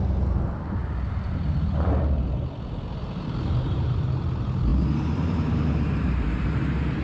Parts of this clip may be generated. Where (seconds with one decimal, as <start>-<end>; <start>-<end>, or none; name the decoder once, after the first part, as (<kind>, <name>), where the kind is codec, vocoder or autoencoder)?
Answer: 0.0-0.8 (vocoder, BigVGAN v2); 1.5-7.0